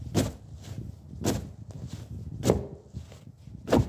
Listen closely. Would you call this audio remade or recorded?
recorded